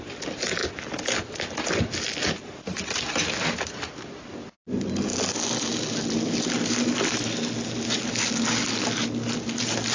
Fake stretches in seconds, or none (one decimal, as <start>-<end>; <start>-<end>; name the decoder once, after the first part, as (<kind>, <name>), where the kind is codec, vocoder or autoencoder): none